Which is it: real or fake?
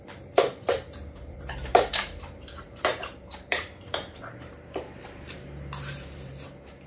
fake